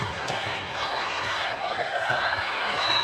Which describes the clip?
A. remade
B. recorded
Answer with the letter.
A